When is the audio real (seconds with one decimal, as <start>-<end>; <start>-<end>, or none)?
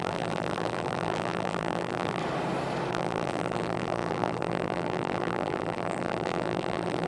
2.2-2.9